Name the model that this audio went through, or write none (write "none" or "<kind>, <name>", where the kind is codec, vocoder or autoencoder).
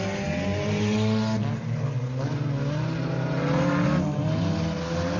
none